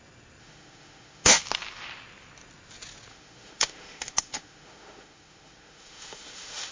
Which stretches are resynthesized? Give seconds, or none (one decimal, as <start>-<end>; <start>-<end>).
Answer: 0.4-1.4; 3.1-6.7